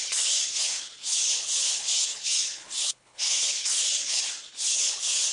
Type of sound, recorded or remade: remade